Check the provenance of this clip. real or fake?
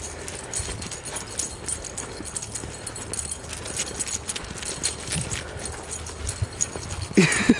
real